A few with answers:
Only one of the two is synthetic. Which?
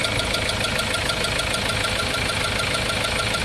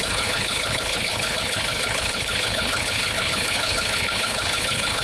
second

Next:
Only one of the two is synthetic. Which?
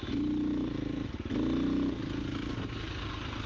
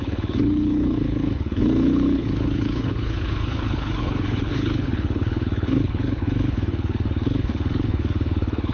second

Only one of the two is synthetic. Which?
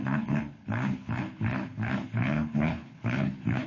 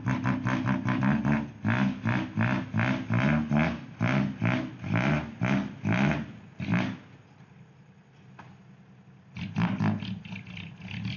first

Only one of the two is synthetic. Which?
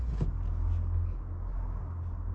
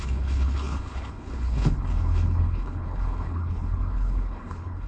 second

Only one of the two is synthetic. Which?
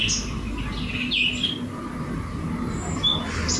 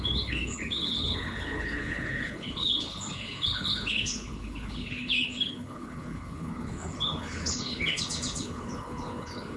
second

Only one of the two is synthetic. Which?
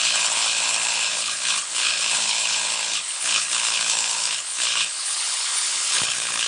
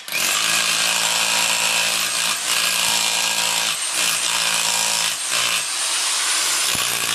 first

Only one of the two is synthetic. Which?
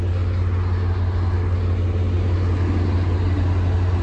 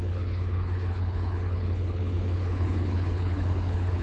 second